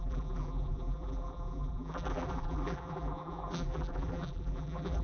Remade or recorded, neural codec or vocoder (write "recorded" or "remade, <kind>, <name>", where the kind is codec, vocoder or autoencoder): remade, vocoder, BigVGAN v2